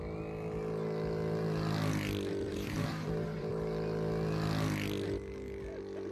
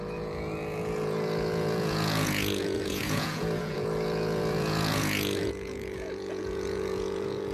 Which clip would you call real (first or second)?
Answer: first